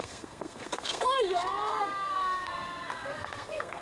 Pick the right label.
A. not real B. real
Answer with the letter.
A